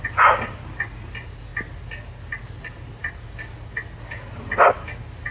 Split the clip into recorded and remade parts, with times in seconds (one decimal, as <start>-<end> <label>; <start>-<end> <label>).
0.0-5.3 recorded